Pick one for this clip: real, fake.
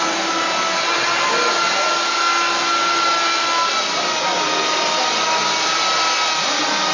real